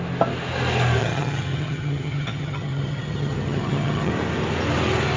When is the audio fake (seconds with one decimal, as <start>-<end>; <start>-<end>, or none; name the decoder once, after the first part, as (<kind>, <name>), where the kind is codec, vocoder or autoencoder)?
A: 1.0-4.1 (vocoder, HiFi-GAN)